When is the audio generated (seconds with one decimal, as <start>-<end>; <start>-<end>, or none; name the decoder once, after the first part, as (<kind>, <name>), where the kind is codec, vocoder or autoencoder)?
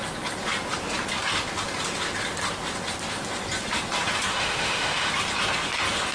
4.3-5.1 (autoencoder, DAC-VAE)